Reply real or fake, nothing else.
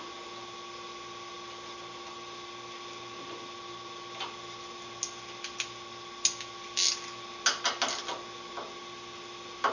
real